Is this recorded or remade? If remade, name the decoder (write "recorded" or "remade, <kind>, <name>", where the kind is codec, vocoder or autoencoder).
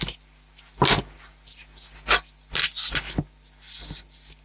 recorded